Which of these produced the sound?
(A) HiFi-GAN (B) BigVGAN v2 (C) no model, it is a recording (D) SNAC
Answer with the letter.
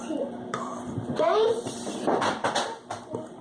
B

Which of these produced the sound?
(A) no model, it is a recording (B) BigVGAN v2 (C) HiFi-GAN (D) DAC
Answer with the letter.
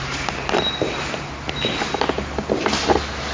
A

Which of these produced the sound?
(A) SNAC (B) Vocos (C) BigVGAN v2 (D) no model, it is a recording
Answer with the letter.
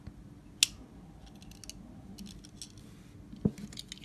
D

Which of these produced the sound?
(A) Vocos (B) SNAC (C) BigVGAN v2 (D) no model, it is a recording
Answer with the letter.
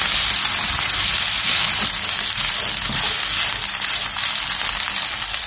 C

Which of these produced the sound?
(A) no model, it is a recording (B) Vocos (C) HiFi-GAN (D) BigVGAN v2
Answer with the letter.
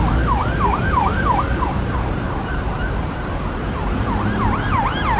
D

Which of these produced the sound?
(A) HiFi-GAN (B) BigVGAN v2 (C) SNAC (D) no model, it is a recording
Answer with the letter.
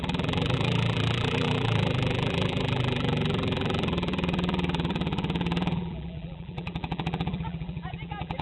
B